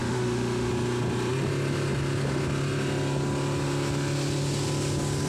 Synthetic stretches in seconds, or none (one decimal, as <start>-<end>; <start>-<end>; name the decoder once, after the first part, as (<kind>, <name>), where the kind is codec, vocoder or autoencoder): 0.0-0.7 (autoencoder, DAC-VAE)